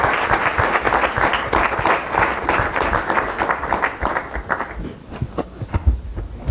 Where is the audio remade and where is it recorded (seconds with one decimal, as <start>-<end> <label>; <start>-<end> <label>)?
0.0-5.0 recorded; 5.0-6.0 remade; 6.0-6.5 recorded

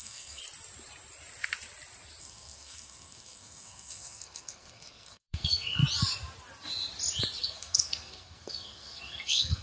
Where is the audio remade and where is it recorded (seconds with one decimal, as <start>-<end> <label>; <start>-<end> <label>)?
0.0-0.4 remade; 0.4-2.2 recorded; 2.2-5.8 remade; 5.8-7.4 recorded; 7.4-9.6 remade

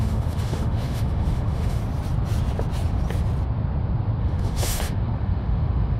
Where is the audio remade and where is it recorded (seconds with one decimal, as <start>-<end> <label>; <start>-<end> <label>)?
0.0-1.8 remade; 1.8-4.2 recorded; 4.2-6.0 remade

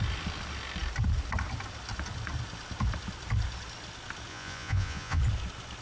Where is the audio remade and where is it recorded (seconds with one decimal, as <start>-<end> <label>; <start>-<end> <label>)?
0.0-4.3 recorded; 4.3-5.2 remade; 5.2-5.8 recorded